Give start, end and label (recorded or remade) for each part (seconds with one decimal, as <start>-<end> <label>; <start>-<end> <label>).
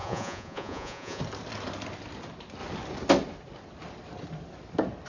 0.0-1.2 remade; 1.2-5.1 recorded